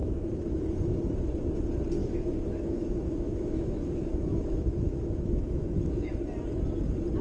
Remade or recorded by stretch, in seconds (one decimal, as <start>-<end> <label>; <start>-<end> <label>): 0.0-1.0 remade; 1.0-2.0 recorded; 2.0-6.2 remade; 6.2-7.2 recorded